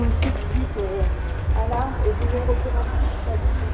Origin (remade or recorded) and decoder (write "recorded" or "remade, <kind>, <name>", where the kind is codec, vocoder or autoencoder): recorded